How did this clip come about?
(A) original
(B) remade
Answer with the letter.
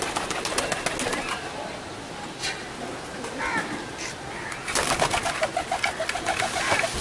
A